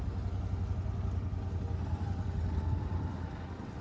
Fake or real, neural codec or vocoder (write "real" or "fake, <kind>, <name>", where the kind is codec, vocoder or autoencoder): real